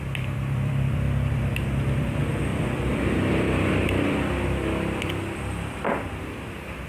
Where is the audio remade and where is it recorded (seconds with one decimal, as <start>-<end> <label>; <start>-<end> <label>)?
0.0-6.9 remade